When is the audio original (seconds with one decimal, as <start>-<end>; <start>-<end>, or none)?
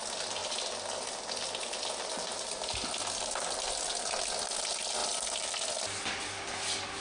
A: 0.0-7.0